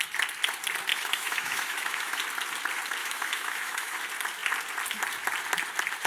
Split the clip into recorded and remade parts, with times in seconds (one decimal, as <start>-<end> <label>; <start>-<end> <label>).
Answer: 0.0-0.9 recorded; 0.9-2.2 remade; 2.2-3.0 recorded; 3.0-4.0 remade; 4.0-6.1 recorded